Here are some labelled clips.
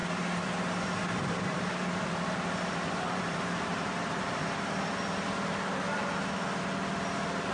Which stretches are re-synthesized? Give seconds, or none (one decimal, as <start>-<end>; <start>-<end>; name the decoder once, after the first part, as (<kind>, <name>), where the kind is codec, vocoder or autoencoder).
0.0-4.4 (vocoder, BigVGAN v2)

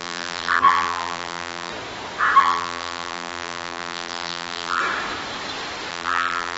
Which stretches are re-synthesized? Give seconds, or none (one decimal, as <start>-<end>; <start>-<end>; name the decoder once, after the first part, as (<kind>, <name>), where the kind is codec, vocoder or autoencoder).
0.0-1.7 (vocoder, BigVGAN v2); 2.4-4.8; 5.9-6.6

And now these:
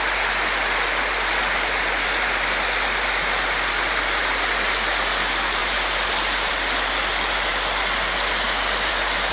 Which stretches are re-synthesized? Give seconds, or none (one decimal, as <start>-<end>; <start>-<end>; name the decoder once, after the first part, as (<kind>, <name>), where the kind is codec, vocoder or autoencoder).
5.6-6.5 (vocoder, BigVGAN v2)